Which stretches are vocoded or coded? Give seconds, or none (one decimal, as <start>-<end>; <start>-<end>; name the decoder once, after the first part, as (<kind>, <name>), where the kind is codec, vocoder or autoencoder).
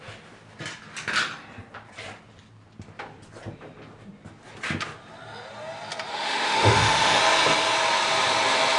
6.1-7.2 (autoencoder, DAC-VAE)